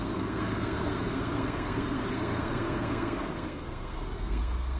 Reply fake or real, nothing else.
fake